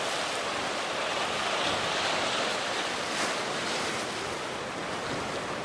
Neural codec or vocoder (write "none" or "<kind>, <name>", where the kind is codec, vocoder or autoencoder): none